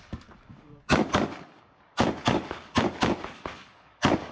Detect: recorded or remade remade